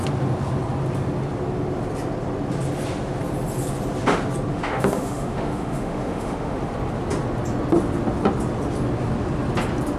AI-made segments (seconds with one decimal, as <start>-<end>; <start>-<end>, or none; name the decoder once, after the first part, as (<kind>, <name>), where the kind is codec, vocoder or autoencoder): 4.5-6.6 (autoencoder, DAC-VAE)